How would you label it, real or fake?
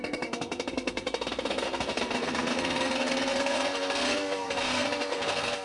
fake